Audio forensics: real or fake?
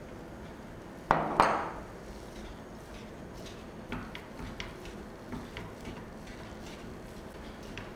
real